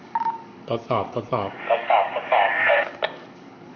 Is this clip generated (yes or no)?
yes